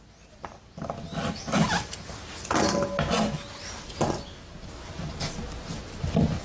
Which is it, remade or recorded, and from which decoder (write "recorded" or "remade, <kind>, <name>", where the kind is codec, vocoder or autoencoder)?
recorded